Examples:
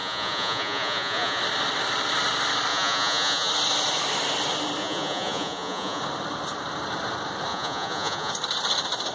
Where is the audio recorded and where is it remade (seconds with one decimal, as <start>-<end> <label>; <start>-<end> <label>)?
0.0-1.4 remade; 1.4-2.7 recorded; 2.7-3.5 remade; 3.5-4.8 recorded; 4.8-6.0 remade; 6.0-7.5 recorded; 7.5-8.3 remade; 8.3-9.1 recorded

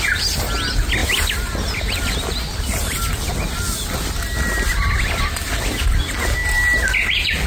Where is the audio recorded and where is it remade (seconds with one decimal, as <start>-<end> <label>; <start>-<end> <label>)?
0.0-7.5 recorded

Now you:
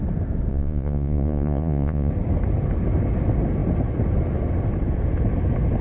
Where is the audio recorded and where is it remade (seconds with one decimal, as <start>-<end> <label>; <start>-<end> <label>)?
0.0-0.5 recorded; 0.5-2.1 remade; 2.1-5.8 recorded